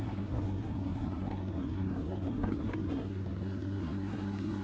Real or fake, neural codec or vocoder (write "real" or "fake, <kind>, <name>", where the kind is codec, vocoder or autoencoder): fake, codec, SNAC